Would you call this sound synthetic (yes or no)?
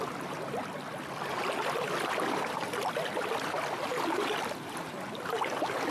no